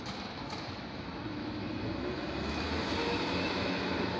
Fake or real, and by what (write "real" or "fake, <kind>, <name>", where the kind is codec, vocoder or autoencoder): fake, autoencoder, DAC-VAE